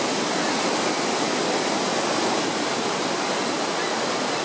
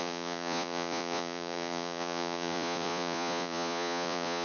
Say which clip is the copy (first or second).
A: second